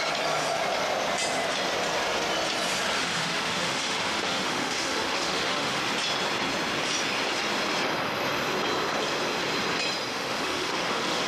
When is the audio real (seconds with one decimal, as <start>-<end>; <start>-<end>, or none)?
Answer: 0.0-3.0; 5.8-10.1